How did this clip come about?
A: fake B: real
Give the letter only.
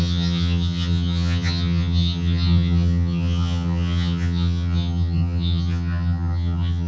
A